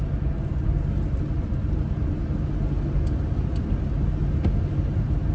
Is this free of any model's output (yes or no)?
yes